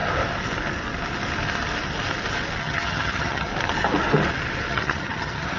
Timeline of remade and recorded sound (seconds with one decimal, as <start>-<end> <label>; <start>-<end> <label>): 0.0-2.6 recorded; 2.6-3.5 remade; 3.5-4.7 recorded; 4.7-5.6 remade